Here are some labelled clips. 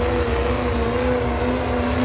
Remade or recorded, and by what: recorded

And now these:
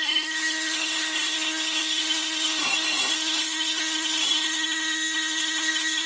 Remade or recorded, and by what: remade, codec, SNAC